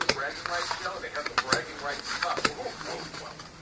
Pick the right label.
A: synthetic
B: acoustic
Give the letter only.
B